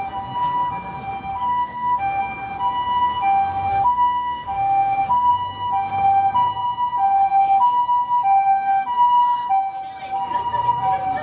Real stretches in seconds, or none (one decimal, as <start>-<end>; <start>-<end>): 0.0-1.3; 2.2-3.7; 5.3-11.2